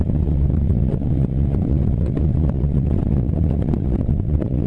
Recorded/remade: remade